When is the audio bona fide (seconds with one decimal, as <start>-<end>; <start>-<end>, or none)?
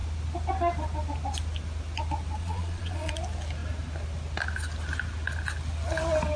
0.0-2.4; 3.1-6.4